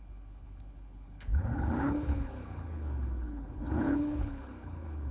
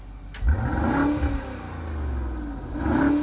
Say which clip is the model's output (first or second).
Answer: first